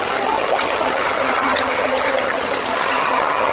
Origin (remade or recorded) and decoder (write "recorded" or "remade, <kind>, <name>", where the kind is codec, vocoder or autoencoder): remade, vocoder, HiFi-GAN